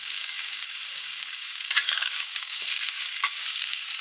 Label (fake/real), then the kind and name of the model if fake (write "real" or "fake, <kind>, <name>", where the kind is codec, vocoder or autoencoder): fake, codec, DAC